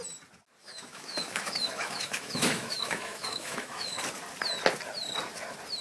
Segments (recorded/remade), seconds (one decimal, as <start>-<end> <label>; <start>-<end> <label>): 0.0-0.6 recorded; 0.6-4.0 remade; 4.0-5.8 recorded

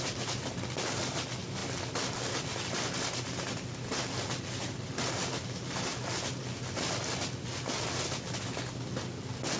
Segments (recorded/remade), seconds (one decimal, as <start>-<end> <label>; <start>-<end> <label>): 0.0-9.6 recorded

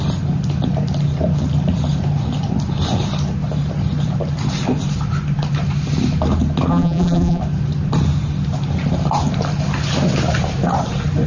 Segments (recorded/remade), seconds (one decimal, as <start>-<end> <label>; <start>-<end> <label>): 0.0-6.7 recorded; 6.7-7.4 remade; 7.4-11.3 recorded

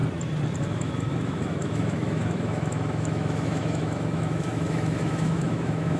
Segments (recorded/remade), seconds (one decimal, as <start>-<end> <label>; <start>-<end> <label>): 0.0-0.6 recorded; 0.6-6.0 remade